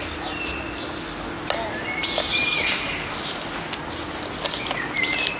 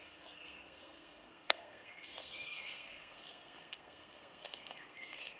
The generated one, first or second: second